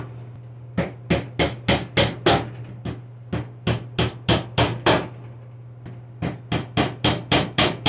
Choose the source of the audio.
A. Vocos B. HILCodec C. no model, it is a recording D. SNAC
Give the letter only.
C